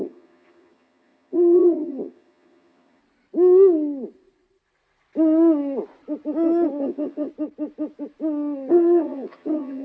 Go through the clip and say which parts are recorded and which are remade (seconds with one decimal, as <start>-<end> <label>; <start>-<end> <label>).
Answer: 0.0-3.0 remade; 3.0-6.8 recorded; 6.8-7.3 remade; 7.3-8.7 recorded; 8.7-9.8 remade